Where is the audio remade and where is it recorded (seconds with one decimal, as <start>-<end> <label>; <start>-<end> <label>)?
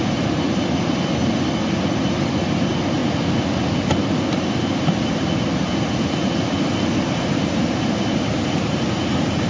0.0-9.5 recorded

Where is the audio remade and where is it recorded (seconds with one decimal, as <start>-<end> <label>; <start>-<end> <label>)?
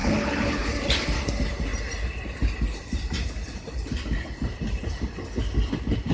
0.0-0.7 remade; 0.7-6.1 recorded